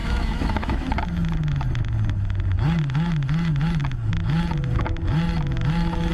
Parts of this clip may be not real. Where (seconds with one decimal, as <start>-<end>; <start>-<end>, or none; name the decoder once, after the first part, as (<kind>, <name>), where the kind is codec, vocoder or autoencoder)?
0.0-0.9 (autoencoder, DAC-VAE)